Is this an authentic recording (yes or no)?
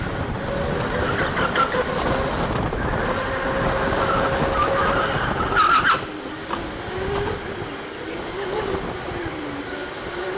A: yes